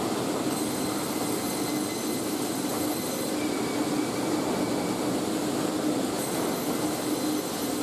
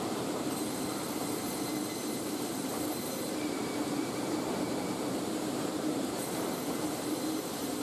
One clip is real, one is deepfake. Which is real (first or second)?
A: first